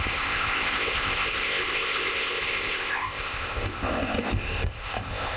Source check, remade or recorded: remade